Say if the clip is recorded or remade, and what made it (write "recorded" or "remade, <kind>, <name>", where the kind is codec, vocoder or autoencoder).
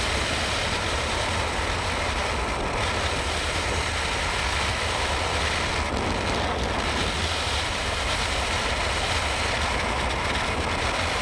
recorded